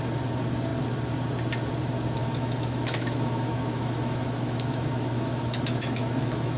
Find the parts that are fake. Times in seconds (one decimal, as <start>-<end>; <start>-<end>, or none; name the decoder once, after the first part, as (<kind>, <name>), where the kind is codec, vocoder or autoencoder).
2.2-6.6 (autoencoder, DAC-VAE)